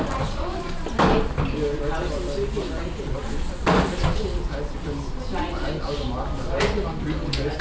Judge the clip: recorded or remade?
recorded